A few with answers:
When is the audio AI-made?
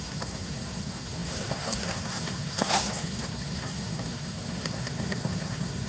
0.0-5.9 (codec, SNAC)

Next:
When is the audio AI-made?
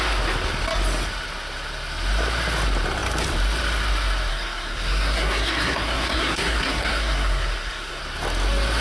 4.3-8.0 (codec, SNAC)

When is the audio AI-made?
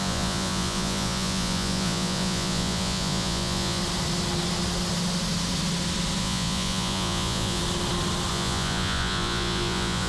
0.0-3.8 (vocoder, Vocos); 6.2-7.6; 8.3-10.1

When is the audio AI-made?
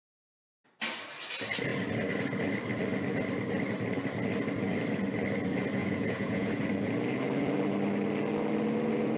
5.8-6.6 (vocoder, Vocos)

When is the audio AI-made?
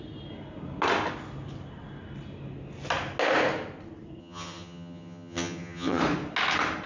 4.2-6.0 (vocoder, HiFi-GAN)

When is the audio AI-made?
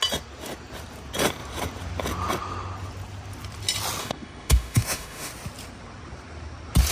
4.0-5.3 (autoencoder, DAC-VAE)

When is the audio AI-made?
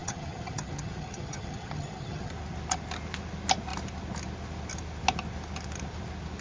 0.0-2.3 (vocoder, HiFi-GAN)